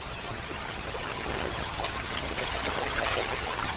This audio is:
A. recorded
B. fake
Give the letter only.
B